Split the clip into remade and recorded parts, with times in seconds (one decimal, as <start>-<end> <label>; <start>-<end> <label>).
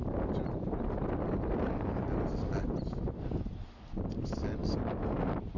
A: 0.0-5.6 recorded